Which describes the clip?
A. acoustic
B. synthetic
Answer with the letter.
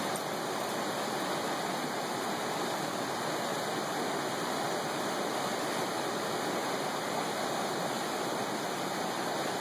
A